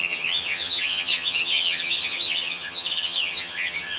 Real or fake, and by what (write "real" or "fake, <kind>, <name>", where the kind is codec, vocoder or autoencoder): fake, vocoder, HiFi-GAN